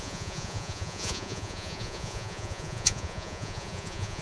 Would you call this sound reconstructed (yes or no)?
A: yes